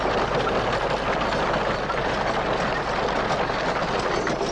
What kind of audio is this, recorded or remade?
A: recorded